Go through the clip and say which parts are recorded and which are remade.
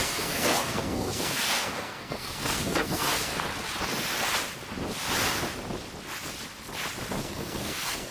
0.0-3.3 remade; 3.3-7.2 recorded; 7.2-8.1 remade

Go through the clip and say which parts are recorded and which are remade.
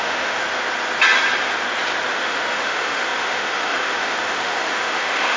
0.0-0.4 remade; 0.4-2.1 recorded; 2.1-5.4 remade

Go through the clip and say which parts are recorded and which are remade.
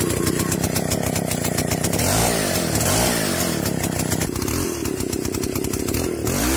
0.0-6.6 recorded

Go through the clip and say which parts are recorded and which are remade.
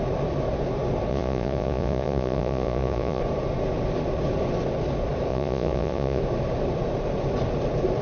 0.0-1.1 recorded; 1.1-3.2 remade; 3.2-5.3 recorded; 5.3-6.2 remade; 6.2-8.0 recorded